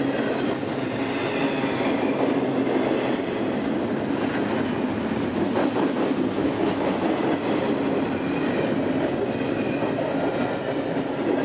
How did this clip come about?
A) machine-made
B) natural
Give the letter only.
B